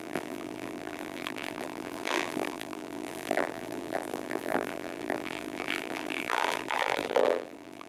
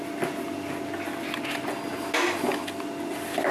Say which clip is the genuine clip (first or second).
second